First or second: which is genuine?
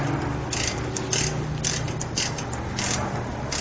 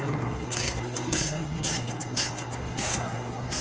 first